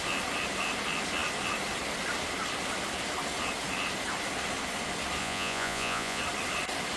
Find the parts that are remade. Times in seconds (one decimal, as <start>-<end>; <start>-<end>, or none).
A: 5.2-6.2